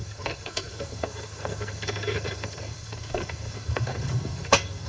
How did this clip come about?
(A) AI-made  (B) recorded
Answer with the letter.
A